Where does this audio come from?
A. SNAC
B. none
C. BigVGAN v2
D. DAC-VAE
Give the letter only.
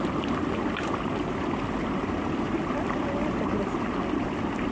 B